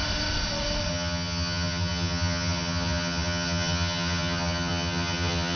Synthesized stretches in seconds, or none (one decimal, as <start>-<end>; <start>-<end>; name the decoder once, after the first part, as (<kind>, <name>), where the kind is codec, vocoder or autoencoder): 0.9-5.6 (vocoder, HiFi-GAN)